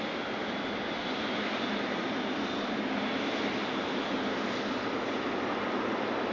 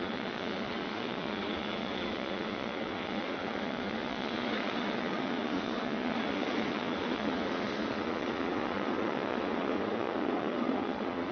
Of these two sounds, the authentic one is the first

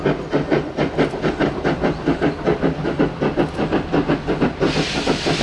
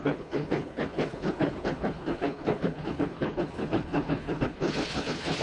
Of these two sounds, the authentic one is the first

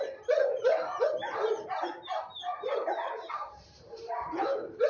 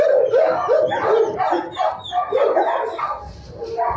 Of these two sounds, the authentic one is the second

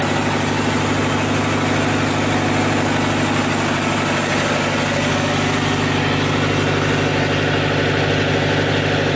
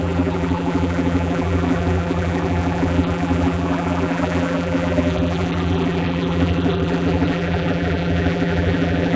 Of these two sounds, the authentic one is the first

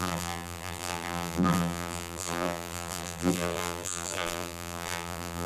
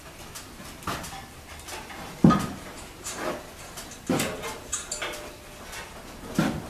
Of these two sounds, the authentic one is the second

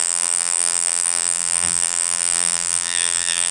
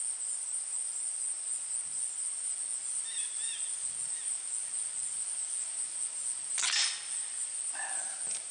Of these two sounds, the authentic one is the second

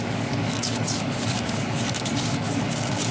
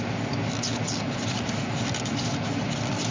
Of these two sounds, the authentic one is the second